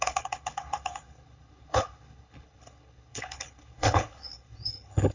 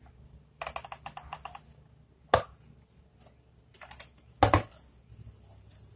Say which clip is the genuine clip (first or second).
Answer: second